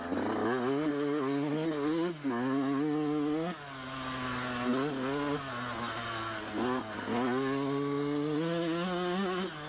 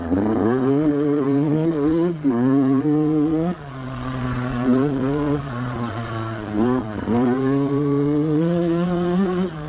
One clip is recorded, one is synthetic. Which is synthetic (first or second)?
second